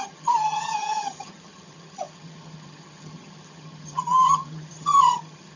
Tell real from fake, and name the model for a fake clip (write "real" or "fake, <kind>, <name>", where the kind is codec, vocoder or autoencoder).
fake, vocoder, HiFi-GAN